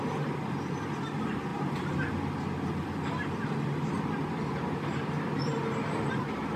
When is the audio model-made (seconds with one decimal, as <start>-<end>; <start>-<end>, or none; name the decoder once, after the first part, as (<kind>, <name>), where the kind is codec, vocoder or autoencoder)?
none